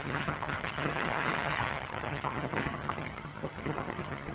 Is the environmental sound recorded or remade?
remade